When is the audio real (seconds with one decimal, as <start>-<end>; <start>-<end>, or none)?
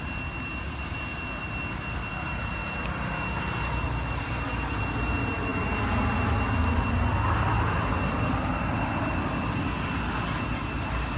0.0-11.2